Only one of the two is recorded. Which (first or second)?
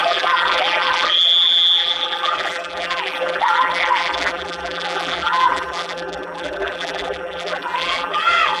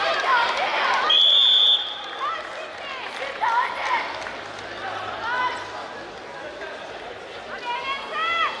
second